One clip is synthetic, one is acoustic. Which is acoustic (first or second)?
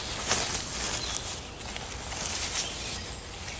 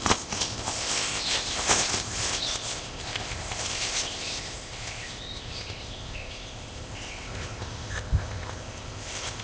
first